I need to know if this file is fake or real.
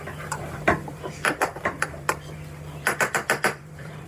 fake